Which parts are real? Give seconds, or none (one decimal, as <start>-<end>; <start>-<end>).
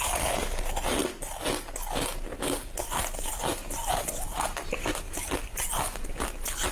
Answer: 0.0-6.7